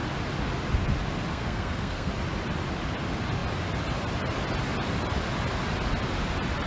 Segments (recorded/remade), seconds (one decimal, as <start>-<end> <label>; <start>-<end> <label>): 0.0-1.3 recorded; 1.3-2.1 remade; 2.1-6.7 recorded